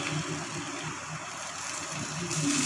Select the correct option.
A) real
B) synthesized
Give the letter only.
A